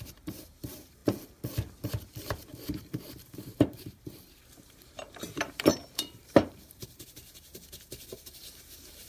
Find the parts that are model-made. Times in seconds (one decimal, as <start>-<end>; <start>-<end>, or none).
0.0-1.0; 1.9-9.1